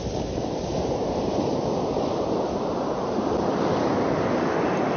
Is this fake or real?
real